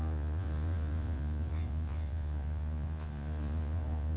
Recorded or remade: remade